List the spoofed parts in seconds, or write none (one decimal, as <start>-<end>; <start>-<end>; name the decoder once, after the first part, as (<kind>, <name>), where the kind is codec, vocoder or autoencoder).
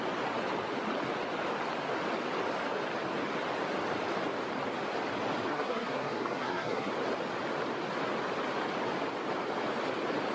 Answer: 5.5-6.9 (codec, SNAC)